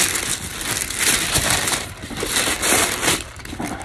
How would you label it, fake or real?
real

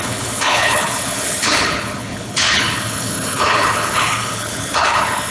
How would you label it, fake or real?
fake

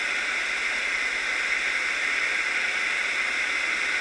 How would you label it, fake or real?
real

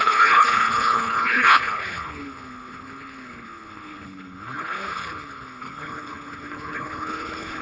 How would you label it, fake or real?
fake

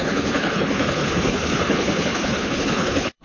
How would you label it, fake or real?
fake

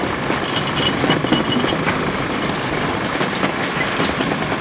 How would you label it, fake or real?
real